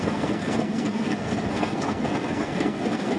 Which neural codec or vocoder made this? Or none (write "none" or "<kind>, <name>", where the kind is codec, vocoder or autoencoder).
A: codec, SNAC